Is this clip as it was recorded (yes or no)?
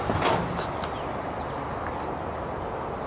yes